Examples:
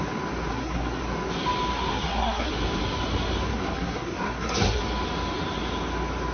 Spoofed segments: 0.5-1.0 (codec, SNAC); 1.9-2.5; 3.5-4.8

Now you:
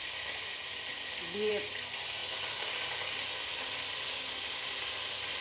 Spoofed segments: none

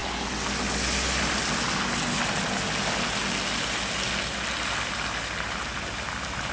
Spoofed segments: none